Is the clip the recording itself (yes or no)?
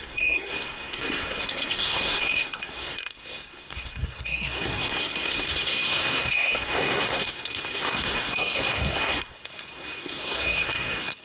no